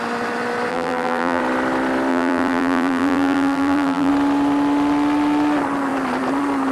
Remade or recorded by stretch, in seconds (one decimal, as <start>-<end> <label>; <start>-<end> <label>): 0.0-0.7 recorded; 0.7-1.4 remade; 1.4-2.1 recorded; 2.1-4.1 remade; 4.1-6.7 recorded